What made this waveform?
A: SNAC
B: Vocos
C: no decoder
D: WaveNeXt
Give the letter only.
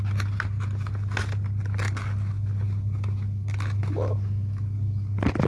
C